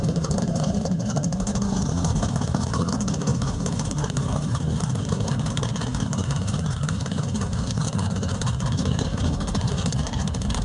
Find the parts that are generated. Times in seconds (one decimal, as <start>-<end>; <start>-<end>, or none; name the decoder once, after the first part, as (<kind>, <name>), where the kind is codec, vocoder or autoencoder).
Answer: 0.0-10.6 (codec, SNAC)